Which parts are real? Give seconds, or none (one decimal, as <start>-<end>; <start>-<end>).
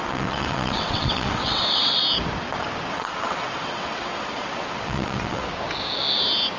2.0-2.9; 5.5-6.6